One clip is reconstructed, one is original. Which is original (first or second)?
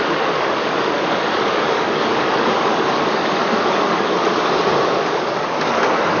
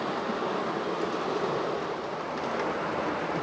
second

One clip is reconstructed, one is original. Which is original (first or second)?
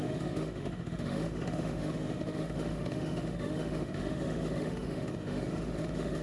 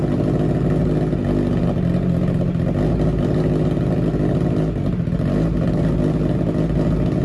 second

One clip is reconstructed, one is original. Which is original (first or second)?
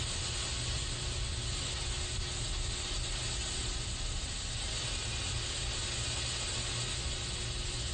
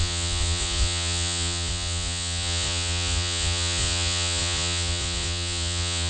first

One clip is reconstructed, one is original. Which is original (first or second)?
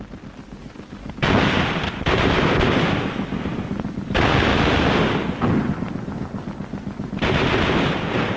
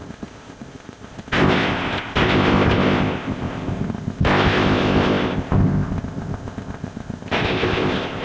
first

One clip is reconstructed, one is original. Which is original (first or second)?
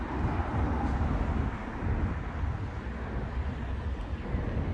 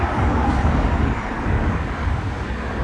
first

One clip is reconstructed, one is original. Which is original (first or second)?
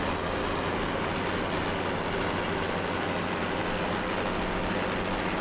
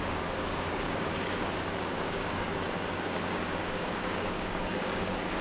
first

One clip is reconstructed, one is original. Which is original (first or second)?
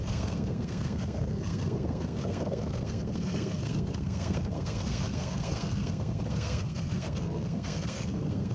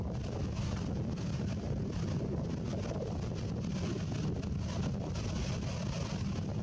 second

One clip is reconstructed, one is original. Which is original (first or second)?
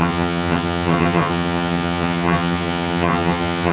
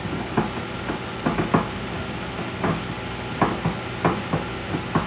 second